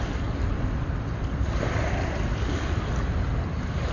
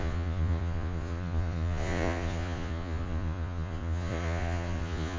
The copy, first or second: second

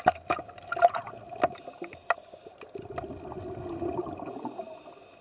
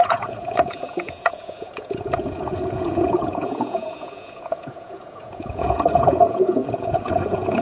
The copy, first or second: second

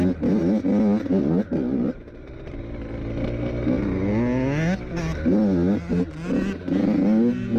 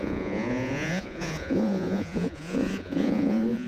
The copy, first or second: second